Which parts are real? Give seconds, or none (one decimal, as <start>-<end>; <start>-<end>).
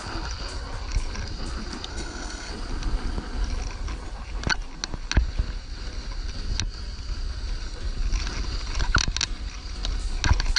0.0-1.9; 2.5-10.6